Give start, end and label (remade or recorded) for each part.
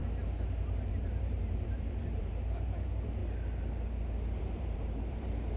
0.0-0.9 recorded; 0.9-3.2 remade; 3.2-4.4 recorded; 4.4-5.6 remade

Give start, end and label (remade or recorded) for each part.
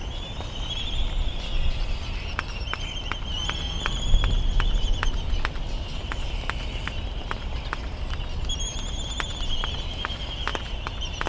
0.0-11.3 recorded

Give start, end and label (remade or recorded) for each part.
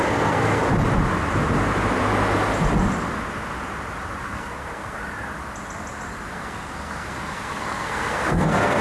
0.0-0.6 remade; 0.6-4.2 recorded; 4.2-5.0 remade; 5.0-6.3 recorded; 6.3-8.8 remade